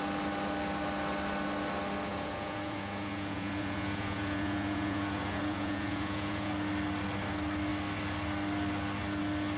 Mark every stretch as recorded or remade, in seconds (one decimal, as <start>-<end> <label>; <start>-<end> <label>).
0.0-2.1 recorded; 2.1-6.5 remade; 6.5-9.6 recorded